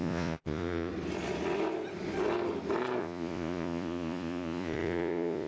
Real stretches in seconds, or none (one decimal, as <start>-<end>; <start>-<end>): 0.9-3.0

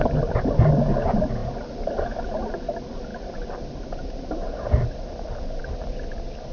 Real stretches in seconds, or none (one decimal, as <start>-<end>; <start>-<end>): 0.0-6.5

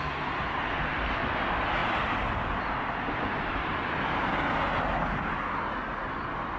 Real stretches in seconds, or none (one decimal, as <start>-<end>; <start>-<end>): 0.0-6.6